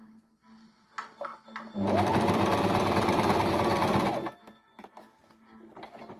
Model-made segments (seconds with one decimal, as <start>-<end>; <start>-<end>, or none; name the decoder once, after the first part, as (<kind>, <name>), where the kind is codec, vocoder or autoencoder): none